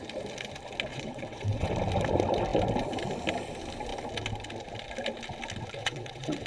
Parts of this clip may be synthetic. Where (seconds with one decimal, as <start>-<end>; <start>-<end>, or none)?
0.9-1.7; 5.8-6.5